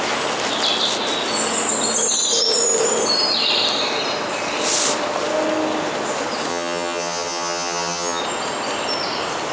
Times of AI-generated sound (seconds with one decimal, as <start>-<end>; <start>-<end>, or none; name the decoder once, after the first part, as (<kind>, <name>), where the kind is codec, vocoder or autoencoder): 6.5-8.2 (vocoder, HiFi-GAN)